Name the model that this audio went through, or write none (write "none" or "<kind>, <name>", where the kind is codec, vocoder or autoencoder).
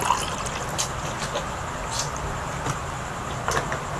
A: none